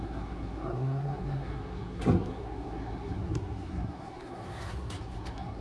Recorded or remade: remade